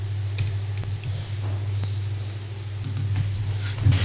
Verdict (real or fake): real